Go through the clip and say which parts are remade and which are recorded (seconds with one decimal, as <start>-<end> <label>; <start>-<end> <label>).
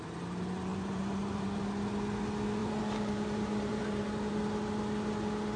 0.0-0.7 recorded; 0.7-1.6 remade; 1.6-2.6 recorded; 2.6-4.3 remade; 4.3-5.6 recorded